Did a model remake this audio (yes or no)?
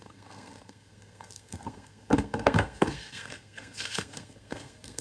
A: yes